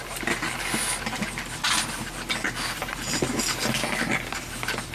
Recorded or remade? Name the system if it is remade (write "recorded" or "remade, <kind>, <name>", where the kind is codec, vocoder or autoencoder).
recorded